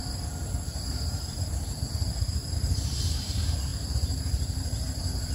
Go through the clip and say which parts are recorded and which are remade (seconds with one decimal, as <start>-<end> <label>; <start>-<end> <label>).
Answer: 0.0-0.9 recorded; 0.9-5.3 remade